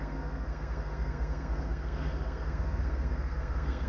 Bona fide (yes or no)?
no